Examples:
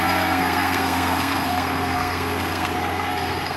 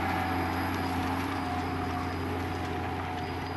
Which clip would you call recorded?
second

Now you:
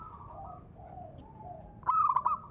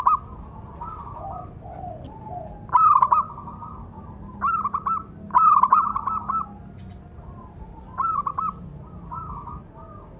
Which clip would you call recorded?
second